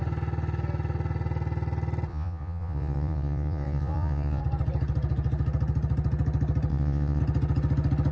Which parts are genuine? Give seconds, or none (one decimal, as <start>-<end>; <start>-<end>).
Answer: 0.0-2.1; 4.4-6.7; 7.2-8.1